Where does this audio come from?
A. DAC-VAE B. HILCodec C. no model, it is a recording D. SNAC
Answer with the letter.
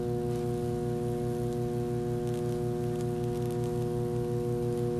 C